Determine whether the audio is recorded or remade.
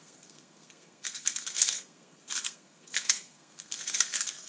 remade